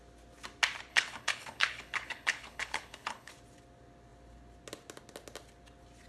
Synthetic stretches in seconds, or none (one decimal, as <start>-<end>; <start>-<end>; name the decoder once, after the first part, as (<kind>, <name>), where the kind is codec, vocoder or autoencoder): 0.9-3.3 (codec, HILCodec)